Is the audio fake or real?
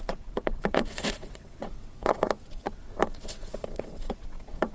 fake